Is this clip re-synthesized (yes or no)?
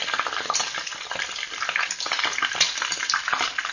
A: no